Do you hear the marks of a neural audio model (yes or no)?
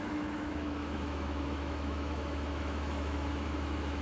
yes